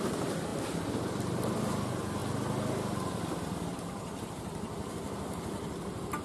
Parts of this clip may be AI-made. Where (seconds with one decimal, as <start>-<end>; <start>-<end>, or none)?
none